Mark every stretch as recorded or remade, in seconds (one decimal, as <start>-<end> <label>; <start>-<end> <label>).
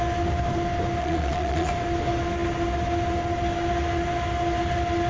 0.0-1.0 recorded; 1.0-1.7 remade; 1.7-5.1 recorded